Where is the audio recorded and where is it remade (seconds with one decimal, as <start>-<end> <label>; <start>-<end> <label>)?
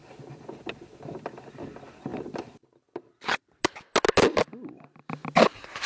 0.0-5.9 recorded